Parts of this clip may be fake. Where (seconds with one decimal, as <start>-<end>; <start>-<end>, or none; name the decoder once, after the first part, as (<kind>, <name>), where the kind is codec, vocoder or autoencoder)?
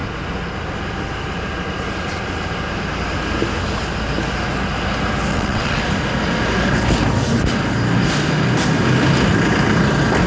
5.3-5.8 (vocoder, WaveNeXt)